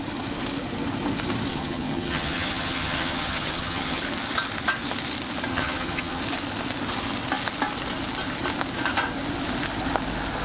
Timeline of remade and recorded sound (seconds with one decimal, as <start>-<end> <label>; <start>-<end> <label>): 0.0-1.5 recorded; 1.5-4.0 remade; 4.0-5.5 recorded; 5.5-6.2 remade; 6.2-10.4 recorded